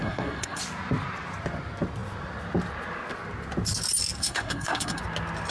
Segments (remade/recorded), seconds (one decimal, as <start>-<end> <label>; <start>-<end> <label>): 0.0-0.6 remade; 0.6-4.2 recorded; 4.2-5.0 remade; 5.0-5.5 recorded